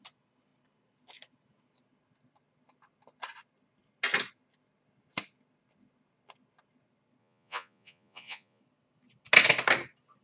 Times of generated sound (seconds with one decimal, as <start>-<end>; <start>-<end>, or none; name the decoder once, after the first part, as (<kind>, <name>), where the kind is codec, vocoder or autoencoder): 7.2-8.6 (vocoder, Vocos)